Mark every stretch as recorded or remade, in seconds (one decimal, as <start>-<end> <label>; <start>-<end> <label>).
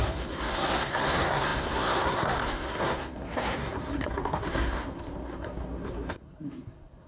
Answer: 0.0-7.1 remade